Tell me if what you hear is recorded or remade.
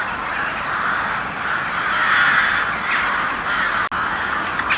recorded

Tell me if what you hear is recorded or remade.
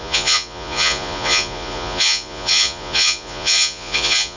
remade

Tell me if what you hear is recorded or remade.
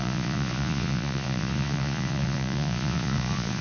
remade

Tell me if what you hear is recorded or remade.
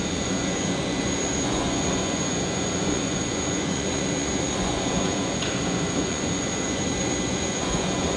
remade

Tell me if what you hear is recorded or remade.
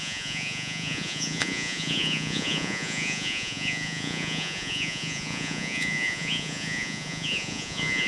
remade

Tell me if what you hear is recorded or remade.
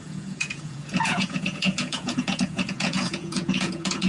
remade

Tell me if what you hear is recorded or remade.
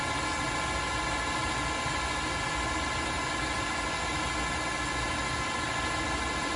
recorded